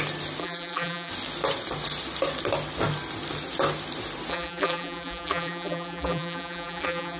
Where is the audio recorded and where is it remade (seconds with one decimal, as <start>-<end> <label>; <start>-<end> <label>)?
0.0-0.4 recorded; 0.4-1.1 remade; 1.1-4.3 recorded; 4.3-7.2 remade